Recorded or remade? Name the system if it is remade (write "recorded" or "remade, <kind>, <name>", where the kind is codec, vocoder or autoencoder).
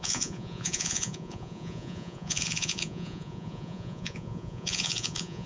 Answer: remade, vocoder, Vocos